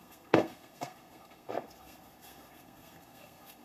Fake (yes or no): yes